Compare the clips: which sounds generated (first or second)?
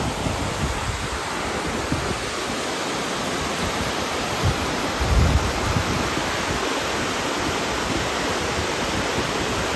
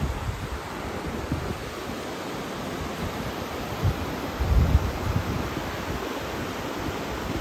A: second